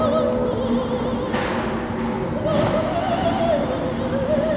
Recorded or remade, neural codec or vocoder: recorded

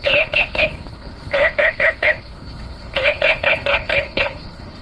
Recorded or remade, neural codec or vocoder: remade, codec, HILCodec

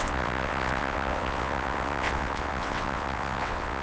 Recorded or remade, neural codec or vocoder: remade, vocoder, WaveNeXt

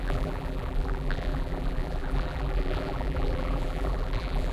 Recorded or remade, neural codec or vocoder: remade, vocoder, BigVGAN v2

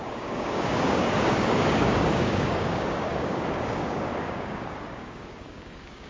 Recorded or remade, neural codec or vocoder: remade, codec, DAC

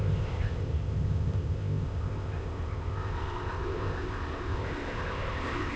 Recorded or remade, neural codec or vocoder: remade, codec, ZipCodec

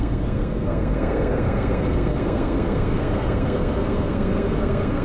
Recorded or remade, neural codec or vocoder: remade, codec, SNAC